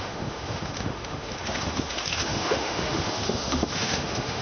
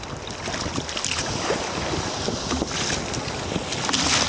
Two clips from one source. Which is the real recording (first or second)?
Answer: second